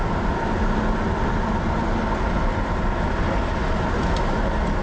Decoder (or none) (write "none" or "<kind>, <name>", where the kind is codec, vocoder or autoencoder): none